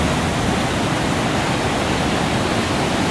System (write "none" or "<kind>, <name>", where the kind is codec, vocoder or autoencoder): none